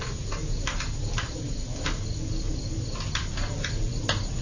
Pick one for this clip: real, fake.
real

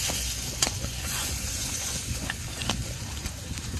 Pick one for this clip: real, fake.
fake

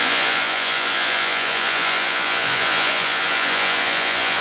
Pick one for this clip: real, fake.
fake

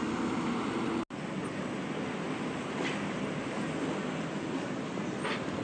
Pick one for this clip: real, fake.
real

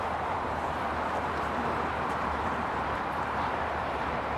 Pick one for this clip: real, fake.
fake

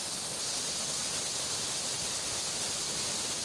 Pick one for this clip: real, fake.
real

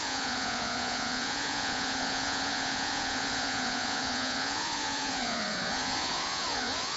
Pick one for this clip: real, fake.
fake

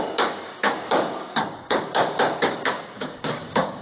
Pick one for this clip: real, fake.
fake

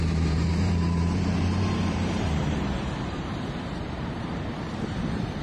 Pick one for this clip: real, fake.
fake